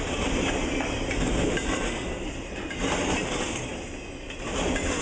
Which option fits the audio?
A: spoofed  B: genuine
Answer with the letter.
B